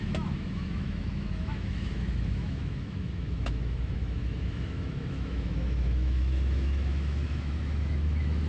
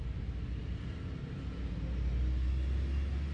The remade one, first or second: first